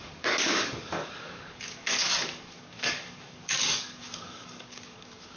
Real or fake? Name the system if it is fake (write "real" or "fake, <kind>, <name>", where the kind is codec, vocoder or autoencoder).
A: fake, codec, DAC